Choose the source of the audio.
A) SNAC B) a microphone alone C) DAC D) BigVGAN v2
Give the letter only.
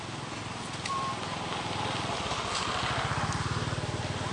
B